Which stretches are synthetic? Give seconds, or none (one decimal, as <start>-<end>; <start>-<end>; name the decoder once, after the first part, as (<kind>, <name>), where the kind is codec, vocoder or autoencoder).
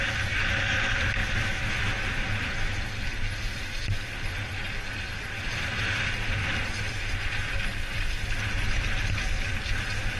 none